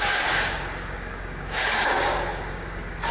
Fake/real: fake